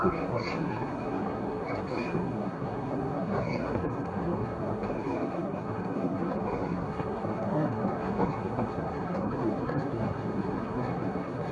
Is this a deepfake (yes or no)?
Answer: yes